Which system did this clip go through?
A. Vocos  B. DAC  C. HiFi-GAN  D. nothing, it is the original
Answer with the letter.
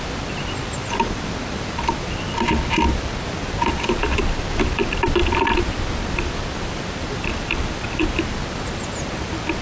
D